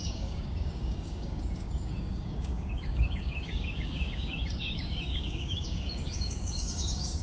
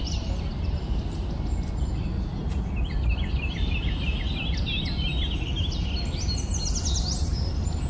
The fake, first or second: first